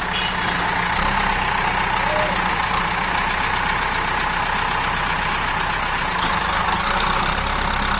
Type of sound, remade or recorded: recorded